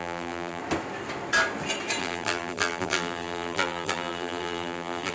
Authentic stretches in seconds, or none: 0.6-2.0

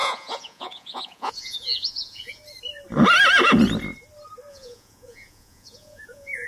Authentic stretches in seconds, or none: 2.4-4.5

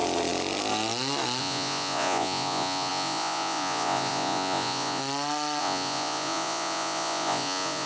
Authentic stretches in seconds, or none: 0.0-1.4; 5.0-5.6

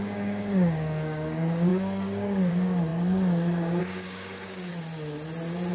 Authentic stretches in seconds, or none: 4.7-5.7